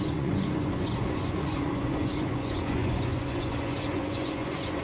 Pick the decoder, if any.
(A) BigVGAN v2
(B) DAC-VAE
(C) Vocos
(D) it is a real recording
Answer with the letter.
C